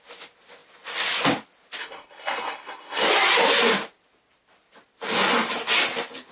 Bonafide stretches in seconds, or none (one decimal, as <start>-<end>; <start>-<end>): 0.0-1.8; 3.1-6.3